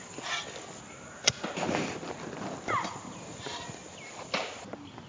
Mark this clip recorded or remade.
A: recorded